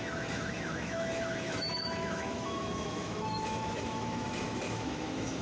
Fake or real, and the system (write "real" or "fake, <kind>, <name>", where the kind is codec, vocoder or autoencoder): fake, autoencoder, DAC-VAE